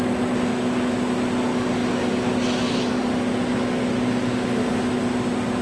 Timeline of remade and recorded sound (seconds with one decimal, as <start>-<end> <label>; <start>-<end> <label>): 0.0-5.6 recorded